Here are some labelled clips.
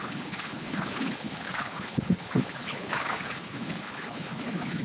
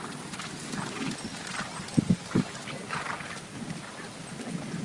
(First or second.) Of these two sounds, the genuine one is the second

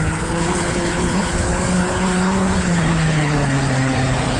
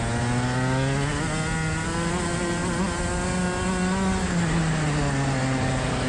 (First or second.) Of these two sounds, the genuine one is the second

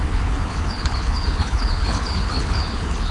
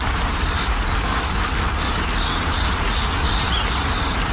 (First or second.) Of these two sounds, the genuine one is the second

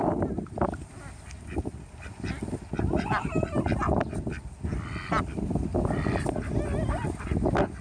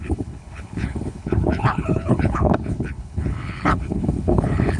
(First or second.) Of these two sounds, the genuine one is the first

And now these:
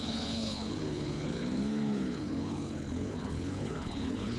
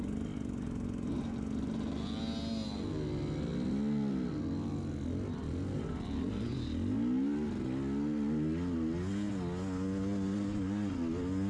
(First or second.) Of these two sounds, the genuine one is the second